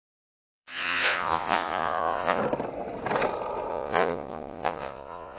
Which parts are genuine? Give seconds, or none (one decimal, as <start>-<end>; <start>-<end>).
2.4-3.7